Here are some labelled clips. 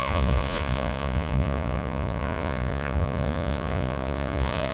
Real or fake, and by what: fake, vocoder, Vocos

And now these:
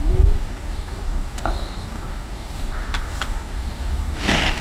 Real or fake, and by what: fake, codec, DAC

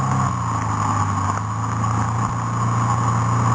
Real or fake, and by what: real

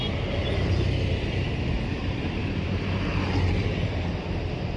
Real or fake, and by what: real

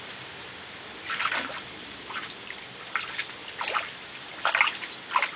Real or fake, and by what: fake, vocoder, BigVGAN v2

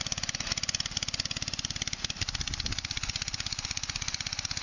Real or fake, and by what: real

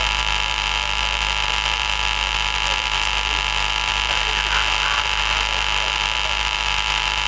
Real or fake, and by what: fake, vocoder, BigVGAN v2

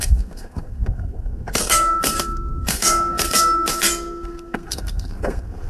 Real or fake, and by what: fake, codec, SNAC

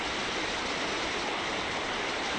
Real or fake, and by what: real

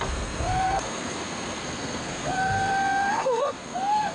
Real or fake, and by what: fake, codec, SNAC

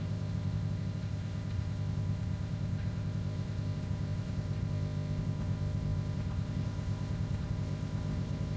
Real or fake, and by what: fake, codec, ZipCodec